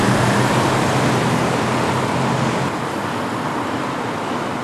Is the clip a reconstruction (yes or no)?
no